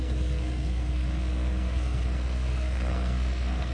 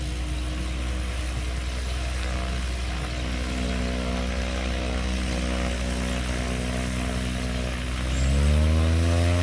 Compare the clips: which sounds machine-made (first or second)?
first